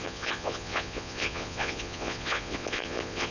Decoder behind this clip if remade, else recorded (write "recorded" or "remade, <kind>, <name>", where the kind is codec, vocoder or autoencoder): remade, vocoder, Vocos